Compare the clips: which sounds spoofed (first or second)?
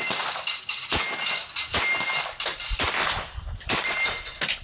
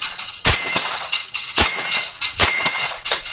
second